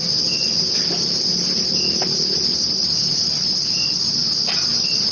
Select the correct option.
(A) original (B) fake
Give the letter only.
A